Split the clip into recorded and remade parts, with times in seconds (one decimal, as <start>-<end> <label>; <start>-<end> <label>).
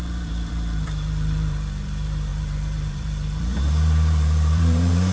0.0-5.1 remade